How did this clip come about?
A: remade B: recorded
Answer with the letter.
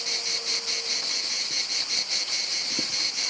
B